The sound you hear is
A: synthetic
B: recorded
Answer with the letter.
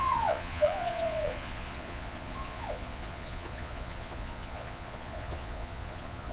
A